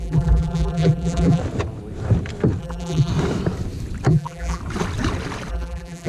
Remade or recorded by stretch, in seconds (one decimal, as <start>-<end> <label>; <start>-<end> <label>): 0.0-1.4 remade; 1.4-2.6 recorded; 2.6-3.1 remade; 3.1-4.1 recorded; 4.1-4.6 remade; 4.6-5.5 recorded; 5.5-6.1 remade